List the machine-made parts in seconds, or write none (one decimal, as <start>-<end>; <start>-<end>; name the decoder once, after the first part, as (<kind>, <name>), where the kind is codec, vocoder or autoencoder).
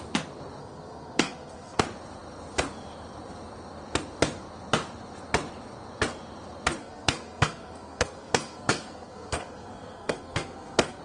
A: 0.6-1.8 (codec, SNAC); 6.8-11.0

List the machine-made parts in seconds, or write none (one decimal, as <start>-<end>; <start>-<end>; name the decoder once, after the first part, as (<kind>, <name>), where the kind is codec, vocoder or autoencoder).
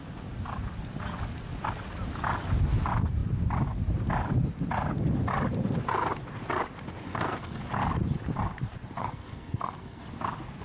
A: 7.0-7.6 (codec, SNAC); 9.0-10.0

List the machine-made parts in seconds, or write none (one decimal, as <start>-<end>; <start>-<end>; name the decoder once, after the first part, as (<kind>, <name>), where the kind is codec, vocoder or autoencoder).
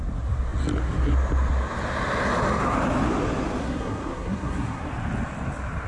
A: 3.6-4.9 (codec, SNAC)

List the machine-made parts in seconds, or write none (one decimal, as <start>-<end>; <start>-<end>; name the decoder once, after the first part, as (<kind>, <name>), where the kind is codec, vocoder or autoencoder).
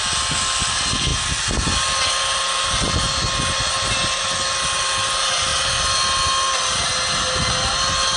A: none